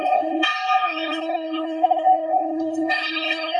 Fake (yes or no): yes